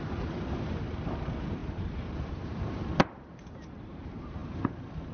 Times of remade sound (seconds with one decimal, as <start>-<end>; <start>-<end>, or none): 0.0-5.1